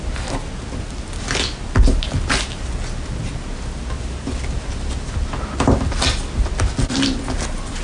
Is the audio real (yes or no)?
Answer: yes